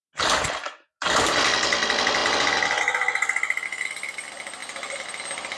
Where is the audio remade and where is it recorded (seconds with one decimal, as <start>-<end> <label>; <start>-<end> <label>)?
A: 0.0-5.6 recorded